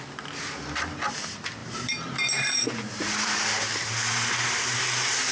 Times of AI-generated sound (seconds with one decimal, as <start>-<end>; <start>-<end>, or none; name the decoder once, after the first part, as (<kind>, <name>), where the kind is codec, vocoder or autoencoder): 1.6-4.8 (vocoder, BigVGAN v2)